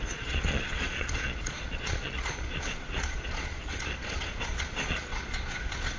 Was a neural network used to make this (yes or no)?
yes